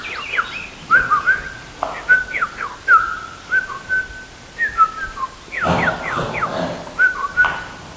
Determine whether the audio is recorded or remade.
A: recorded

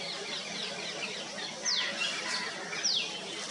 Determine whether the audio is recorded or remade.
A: recorded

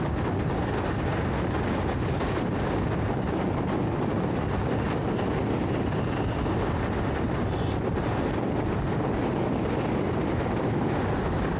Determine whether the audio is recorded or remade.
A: recorded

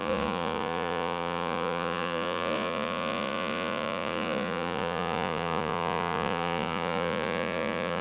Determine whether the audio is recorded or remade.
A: remade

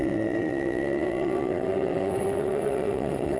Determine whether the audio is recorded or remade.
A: remade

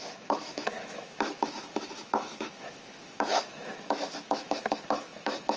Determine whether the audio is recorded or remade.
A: remade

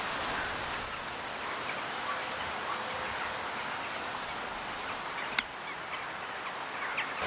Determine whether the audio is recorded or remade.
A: recorded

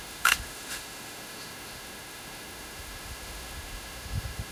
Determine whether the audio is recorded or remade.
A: remade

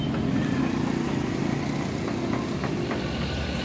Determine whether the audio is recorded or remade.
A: recorded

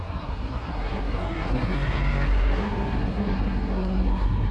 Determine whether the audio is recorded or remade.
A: remade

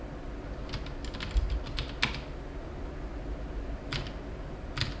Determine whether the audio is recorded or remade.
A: recorded